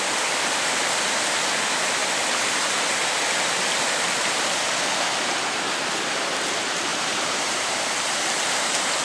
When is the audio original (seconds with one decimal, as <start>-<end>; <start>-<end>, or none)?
0.0-6.9; 7.8-9.0